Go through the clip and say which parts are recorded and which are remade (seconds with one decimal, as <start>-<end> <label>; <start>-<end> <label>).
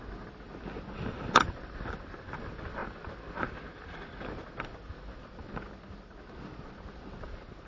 0.0-7.7 recorded